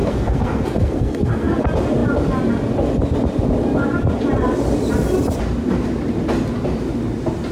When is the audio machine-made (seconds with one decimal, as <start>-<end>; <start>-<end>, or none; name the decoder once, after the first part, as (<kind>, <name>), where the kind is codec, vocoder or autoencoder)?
0.0-1.6 (codec, SNAC)